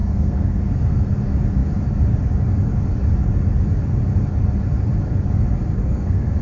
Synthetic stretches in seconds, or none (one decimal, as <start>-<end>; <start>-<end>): 0.0-1.1; 5.8-6.4